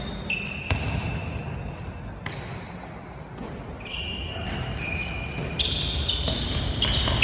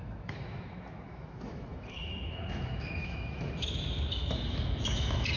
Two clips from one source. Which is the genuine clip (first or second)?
first